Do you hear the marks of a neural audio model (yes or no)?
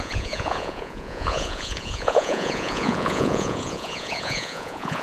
yes